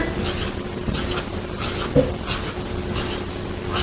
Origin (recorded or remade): recorded